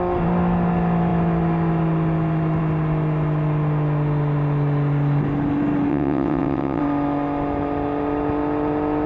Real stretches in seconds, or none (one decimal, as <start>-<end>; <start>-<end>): 0.0-5.9; 6.8-9.1